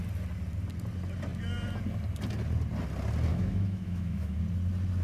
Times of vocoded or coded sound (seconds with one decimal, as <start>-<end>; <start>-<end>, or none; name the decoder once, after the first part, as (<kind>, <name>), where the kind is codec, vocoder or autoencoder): 3.3-4.4 (autoencoder, DAC-VAE)